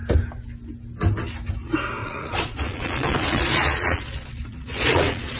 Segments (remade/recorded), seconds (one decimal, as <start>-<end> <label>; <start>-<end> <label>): 0.0-2.0 recorded; 2.0-5.4 remade